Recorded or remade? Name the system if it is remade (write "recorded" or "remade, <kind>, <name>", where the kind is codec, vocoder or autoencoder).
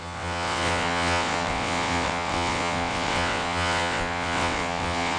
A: remade, vocoder, WaveNeXt